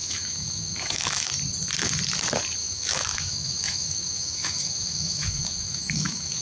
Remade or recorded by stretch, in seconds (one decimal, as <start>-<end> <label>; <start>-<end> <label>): 0.0-1.3 remade; 1.3-2.6 recorded; 2.6-6.4 remade